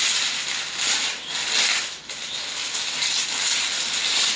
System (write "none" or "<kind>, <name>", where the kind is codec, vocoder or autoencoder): none